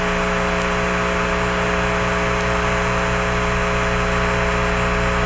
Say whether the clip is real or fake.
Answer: real